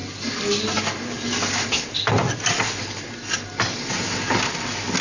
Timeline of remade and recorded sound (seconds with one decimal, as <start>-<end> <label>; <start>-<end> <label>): 0.0-5.0 recorded